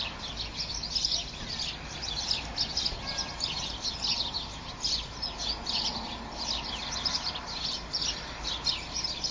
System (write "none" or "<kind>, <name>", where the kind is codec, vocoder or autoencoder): none